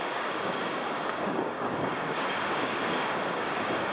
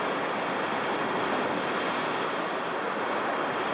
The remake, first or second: first